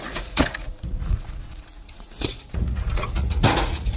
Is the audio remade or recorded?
remade